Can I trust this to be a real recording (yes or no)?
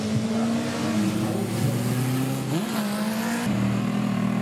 yes